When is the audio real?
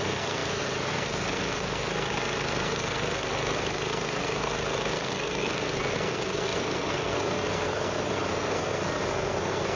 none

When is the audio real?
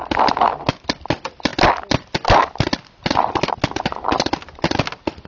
0.0-5.3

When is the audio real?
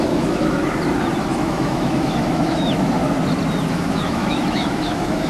0.6-1.2; 3.0-3.7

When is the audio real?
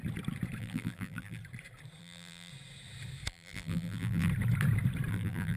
0.0-0.6; 1.4-2.0; 2.5-3.3; 4.3-5.1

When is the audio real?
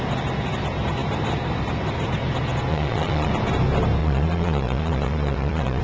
0.0-2.7; 3.3-4.0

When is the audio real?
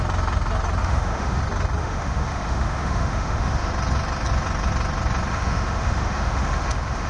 0.0-0.8; 1.4-1.8; 3.7-5.3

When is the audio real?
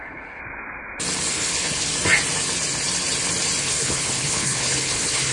0.4-1.3; 1.9-3.6